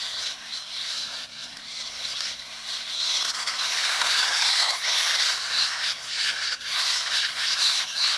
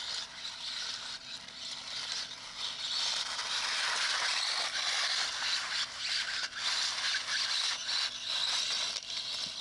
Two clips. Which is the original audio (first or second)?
second